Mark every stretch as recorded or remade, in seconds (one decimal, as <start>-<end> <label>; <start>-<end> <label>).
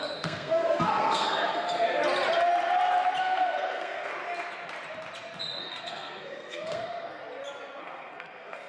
0.0-2.0 remade; 2.0-3.2 recorded; 3.2-4.1 remade; 4.1-5.6 recorded; 5.6-7.2 remade; 7.2-7.8 recorded; 7.8-8.7 remade